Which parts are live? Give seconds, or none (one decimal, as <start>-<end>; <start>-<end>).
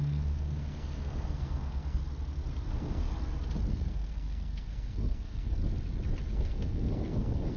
2.0-2.7; 3.1-3.7; 5.6-6.3